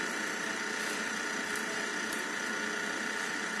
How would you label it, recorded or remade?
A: recorded